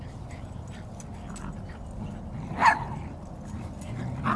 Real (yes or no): yes